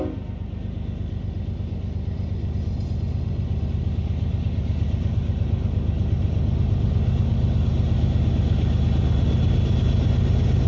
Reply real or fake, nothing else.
real